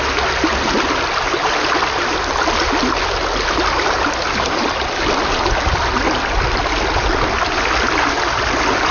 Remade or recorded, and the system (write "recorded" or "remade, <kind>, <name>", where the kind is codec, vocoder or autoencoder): recorded